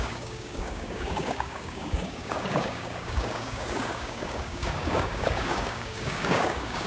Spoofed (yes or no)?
yes